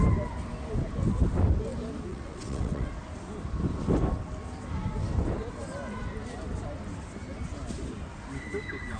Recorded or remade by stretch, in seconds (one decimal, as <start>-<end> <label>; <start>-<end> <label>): 0.0-2.1 recorded; 2.1-2.9 remade; 2.9-9.0 recorded